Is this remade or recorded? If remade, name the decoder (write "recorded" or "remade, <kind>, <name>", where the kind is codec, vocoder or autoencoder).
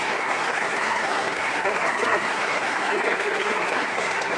remade, codec, SNAC